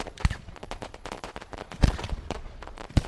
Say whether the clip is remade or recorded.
remade